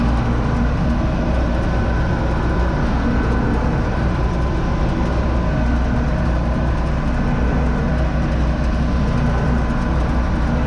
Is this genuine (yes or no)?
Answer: yes